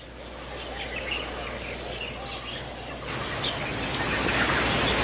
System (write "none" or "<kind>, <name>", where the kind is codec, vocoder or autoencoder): none